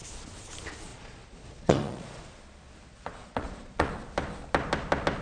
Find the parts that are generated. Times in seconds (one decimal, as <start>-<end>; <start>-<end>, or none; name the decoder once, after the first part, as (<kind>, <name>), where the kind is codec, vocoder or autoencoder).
0.9-2.2 (vocoder, Vocos); 2.9-3.9